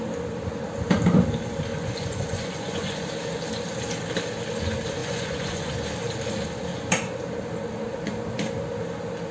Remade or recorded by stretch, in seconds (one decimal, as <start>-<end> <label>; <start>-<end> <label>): 0.0-1.7 recorded; 1.7-3.1 remade; 3.1-5.0 recorded; 5.0-5.7 remade; 5.7-9.3 recorded